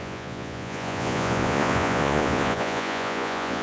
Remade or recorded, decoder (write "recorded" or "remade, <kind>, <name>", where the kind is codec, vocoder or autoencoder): remade, vocoder, Vocos